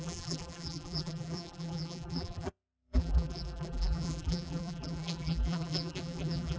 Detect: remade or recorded remade